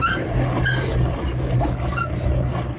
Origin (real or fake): real